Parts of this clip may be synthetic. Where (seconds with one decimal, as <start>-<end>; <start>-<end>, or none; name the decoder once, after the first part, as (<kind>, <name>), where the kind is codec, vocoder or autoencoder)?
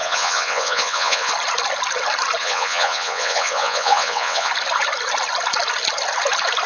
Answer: 0.0-1.3 (vocoder, WaveNeXt); 2.4-4.5